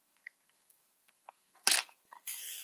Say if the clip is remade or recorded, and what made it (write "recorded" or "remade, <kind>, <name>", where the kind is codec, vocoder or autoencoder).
remade, codec, SNAC